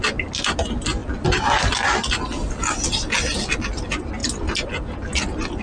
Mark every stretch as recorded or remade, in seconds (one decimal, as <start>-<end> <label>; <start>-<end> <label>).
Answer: 0.0-5.6 recorded